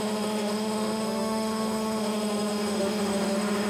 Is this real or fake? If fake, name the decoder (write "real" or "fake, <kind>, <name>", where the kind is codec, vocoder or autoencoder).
fake, autoencoder, DAC-VAE